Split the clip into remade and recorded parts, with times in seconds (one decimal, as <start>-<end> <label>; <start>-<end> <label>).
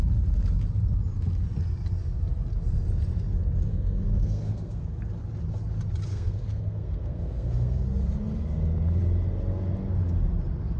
0.0-3.7 recorded; 3.7-5.0 remade; 5.0-6.1 recorded; 6.1-7.8 remade; 7.8-10.8 recorded